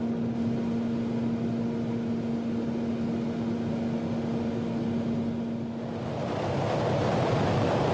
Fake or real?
real